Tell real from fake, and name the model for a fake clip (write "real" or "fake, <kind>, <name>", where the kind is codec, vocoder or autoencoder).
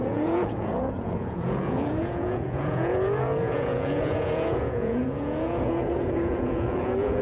fake, vocoder, Vocos